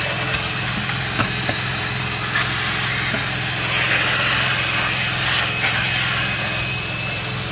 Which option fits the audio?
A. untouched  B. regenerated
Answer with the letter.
A